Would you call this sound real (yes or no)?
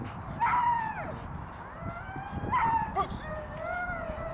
yes